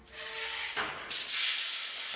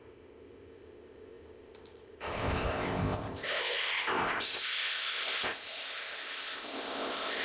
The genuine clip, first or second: first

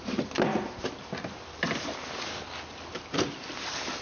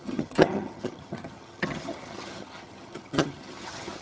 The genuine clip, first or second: first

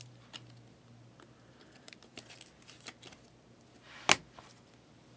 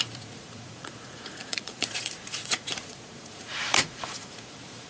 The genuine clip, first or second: first